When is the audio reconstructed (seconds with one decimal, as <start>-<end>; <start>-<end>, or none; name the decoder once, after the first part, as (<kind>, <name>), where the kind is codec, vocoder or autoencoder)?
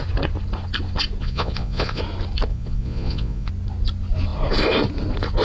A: 1.2-2.0 (vocoder, Vocos); 2.5-3.5